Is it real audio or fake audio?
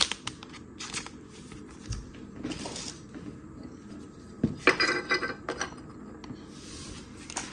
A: real